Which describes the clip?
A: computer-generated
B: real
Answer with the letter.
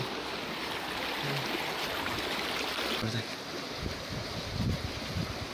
B